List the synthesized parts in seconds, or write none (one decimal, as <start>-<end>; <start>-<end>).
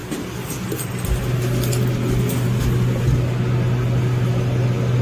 none